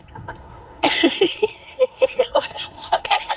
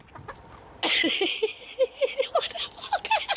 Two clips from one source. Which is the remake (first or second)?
first